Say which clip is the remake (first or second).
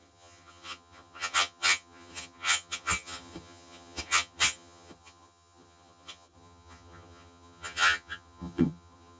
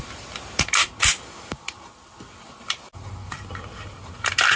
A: first